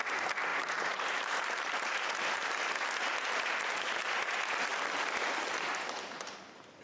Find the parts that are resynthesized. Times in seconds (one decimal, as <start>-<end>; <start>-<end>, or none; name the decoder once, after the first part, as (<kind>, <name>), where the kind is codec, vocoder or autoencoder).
0.5-2.5 (vocoder, BigVGAN v2)